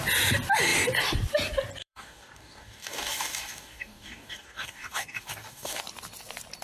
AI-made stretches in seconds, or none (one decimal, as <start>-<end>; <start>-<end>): 1.8-5.8